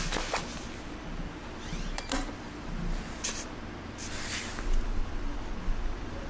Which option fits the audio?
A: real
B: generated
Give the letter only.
A